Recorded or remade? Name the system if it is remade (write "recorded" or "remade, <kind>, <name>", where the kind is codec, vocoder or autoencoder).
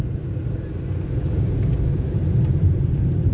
recorded